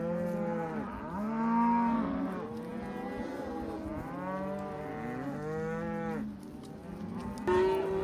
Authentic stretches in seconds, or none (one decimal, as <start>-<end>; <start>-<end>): 0.0-8.0